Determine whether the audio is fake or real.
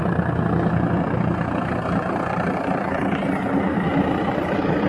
real